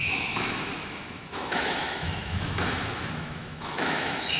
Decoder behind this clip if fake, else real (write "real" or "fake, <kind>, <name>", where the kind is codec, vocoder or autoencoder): fake, autoencoder, DAC-VAE